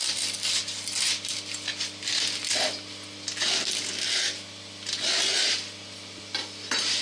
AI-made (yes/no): no